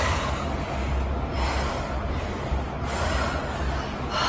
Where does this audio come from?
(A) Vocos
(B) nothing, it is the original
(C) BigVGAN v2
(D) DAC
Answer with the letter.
B